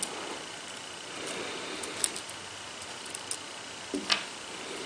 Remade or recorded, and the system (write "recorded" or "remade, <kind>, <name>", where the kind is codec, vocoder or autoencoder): recorded